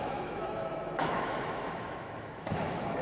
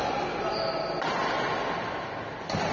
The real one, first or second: second